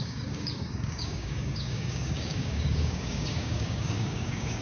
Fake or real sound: fake